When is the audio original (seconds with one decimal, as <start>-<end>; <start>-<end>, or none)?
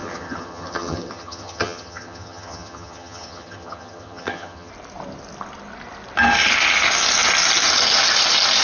4.7-8.6